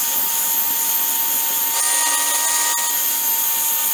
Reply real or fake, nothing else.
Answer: real